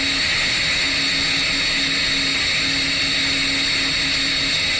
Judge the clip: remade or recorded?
recorded